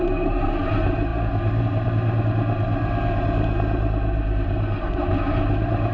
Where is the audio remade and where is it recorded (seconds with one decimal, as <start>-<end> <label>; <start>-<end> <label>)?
0.0-5.9 remade